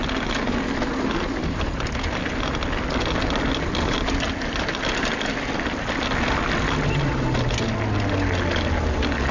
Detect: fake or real real